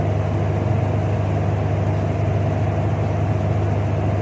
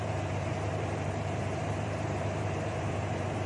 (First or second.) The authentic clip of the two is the first